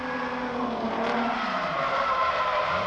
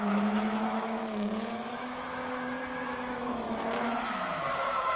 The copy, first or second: second